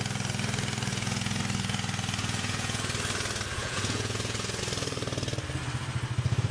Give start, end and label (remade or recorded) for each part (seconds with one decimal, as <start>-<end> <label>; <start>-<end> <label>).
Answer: 0.0-0.9 recorded; 0.9-1.4 remade; 1.4-2.2 recorded; 2.2-2.8 remade; 2.8-3.6 recorded; 3.6-4.6 remade; 4.6-6.5 recorded